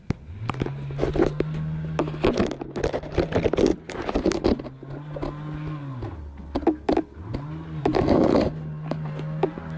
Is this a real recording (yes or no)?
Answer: yes